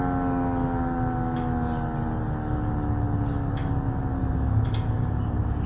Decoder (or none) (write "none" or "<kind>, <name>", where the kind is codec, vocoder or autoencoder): none